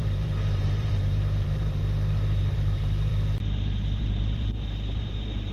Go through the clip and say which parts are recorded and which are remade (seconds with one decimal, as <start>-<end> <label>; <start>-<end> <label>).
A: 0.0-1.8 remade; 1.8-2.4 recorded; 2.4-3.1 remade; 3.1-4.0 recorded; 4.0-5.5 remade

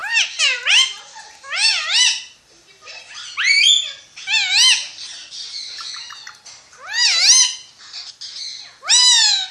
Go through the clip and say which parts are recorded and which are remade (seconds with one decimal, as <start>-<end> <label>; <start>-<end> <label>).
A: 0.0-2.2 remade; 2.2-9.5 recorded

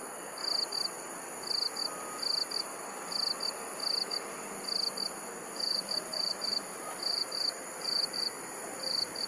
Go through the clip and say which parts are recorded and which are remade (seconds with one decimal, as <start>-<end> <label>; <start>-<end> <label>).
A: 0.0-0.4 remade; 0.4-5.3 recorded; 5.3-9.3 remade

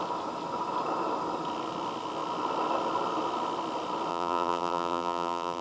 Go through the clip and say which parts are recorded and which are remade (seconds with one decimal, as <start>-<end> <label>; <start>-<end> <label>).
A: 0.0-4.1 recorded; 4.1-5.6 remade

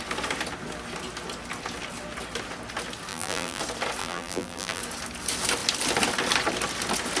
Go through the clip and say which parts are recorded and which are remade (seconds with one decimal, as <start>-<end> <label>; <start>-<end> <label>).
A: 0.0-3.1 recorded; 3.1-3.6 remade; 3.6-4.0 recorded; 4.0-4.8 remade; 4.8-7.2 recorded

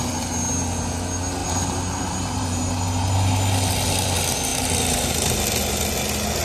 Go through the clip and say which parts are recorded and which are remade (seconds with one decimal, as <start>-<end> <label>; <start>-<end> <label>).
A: 0.0-1.4 recorded; 1.4-2.6 remade; 2.6-6.4 recorded